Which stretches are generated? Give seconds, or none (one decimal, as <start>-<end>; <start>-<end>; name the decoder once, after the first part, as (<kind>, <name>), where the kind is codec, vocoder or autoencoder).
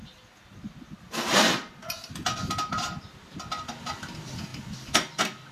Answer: none